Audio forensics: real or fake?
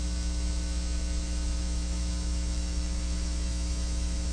fake